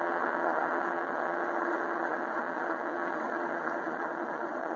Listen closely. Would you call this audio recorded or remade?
remade